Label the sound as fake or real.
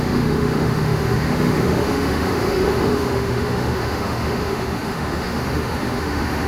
fake